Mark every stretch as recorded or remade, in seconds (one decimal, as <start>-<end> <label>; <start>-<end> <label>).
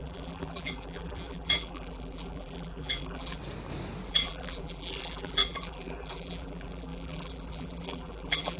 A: 0.0-3.4 remade; 3.4-4.1 recorded; 4.1-8.6 remade